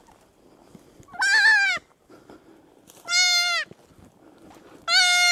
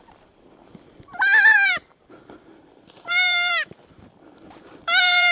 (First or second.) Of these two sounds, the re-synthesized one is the second